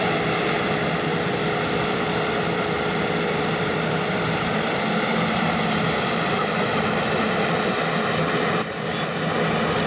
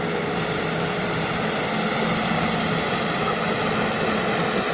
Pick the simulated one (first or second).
first